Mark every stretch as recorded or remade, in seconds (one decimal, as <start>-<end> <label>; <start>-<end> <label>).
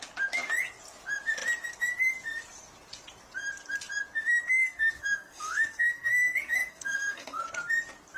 0.0-4.6 recorded; 4.6-7.4 remade; 7.4-8.2 recorded